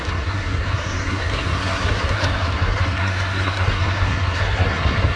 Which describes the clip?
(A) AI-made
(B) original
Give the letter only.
A